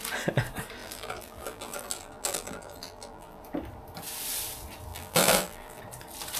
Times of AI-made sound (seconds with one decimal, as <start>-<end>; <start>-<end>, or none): 0.8-3.4; 4.9-5.8